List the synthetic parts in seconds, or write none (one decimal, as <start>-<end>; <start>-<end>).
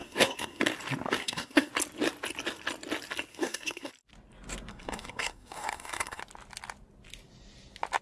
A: 0.0-0.6; 1.2-1.7; 3.3-3.9; 4.7-6.2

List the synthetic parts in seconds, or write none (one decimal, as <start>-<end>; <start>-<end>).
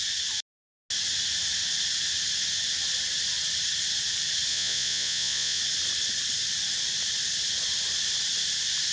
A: 4.5-5.6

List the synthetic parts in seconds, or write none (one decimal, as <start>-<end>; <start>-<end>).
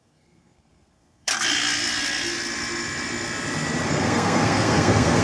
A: 0.0-1.3; 3.9-5.2